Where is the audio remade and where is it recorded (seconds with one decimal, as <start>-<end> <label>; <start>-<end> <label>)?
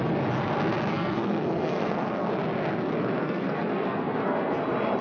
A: 0.0-0.9 recorded; 0.9-2.3 remade; 2.3-3.2 recorded; 3.2-4.6 remade; 4.6-5.0 recorded